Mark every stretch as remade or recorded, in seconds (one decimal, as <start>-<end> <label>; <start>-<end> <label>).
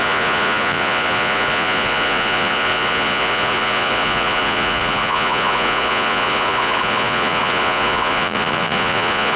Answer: 0.0-9.4 remade